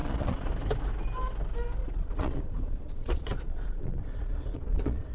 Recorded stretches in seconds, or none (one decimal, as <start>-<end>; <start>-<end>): 0.5-1.8